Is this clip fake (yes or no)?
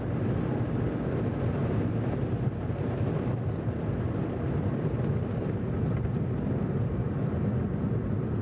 no